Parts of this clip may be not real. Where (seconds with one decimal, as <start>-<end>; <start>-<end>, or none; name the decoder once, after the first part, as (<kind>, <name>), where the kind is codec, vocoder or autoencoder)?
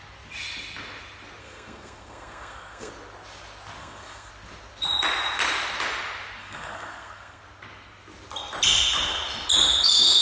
1.4-2.9 (codec, SNAC); 3.8-4.3; 6.4-7.4